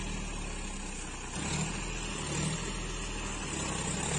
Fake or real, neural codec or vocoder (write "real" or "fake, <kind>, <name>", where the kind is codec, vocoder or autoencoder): real